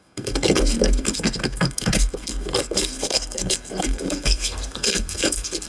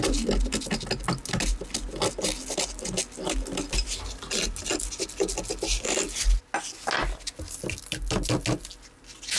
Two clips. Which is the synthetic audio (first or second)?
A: first